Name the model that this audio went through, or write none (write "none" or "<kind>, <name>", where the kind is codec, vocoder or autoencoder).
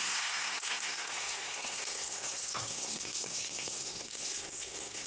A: codec, SNAC